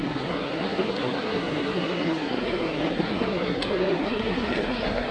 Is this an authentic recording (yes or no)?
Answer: no